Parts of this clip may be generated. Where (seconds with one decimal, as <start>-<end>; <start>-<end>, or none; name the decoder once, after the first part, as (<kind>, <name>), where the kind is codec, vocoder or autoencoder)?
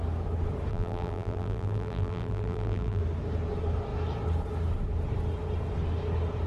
0.7-3.0 (vocoder, BigVGAN v2)